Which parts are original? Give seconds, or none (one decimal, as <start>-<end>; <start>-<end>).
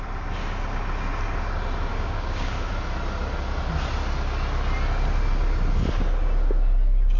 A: 0.0-1.9; 2.7-7.2